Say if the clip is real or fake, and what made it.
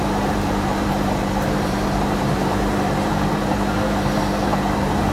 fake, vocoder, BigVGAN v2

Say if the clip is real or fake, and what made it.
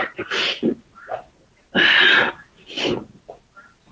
real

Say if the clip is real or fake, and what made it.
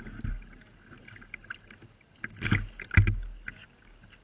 real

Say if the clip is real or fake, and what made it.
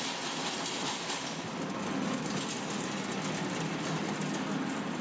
real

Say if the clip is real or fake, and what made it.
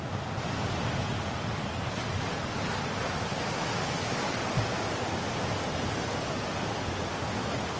real